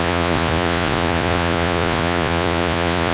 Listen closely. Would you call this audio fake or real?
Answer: fake